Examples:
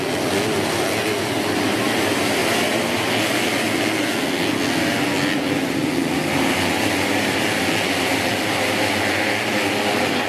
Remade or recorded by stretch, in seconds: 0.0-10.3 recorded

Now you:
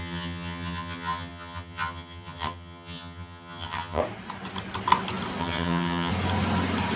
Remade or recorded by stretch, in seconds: 0.0-4.0 remade; 4.0-5.4 recorded; 5.4-6.1 remade; 6.1-7.0 recorded

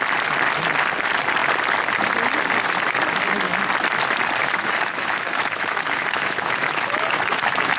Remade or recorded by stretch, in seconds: 0.0-4.4 recorded; 4.4-7.8 remade

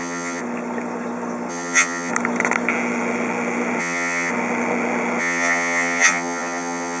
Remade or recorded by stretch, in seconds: 0.0-0.4 remade; 0.4-1.5 recorded; 1.5-2.1 remade; 2.1-3.8 recorded; 3.8-4.3 remade; 4.3-5.2 recorded; 5.2-7.0 remade

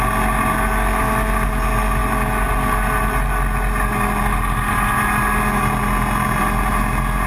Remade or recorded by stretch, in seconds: 0.0-7.3 recorded

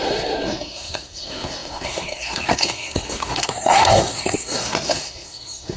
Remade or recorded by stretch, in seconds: 0.0-5.8 remade

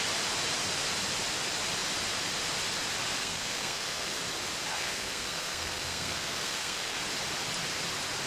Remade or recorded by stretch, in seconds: 0.0-3.2 recorded; 3.2-4.2 remade; 4.2-4.7 recorded; 4.7-7.0 remade; 7.0-8.3 recorded

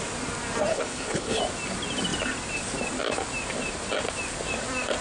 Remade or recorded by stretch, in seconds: 0.0-0.7 recorded; 0.7-1.4 remade; 1.4-5.0 recorded